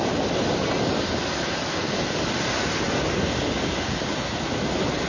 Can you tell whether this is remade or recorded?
recorded